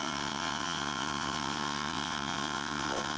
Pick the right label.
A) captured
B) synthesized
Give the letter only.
B